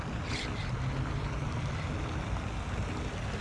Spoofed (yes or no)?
no